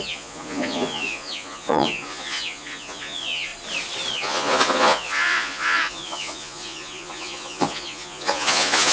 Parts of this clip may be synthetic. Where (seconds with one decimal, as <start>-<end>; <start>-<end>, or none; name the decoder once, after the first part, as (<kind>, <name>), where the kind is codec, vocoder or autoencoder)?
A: 0.0-3.5 (vocoder, Vocos); 4.1-8.9